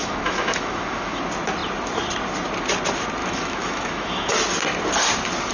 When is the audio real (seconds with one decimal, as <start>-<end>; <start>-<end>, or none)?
1.2-3.2; 4.4-5.5